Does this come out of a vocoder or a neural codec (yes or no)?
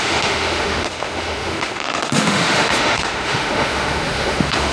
yes